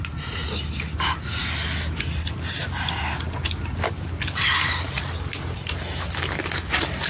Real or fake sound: real